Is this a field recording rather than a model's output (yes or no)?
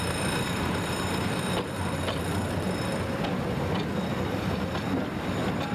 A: yes